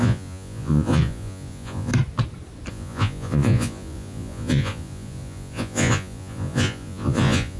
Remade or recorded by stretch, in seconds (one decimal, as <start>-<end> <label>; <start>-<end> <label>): 0.0-1.9 remade; 1.9-2.7 recorded; 2.7-7.6 remade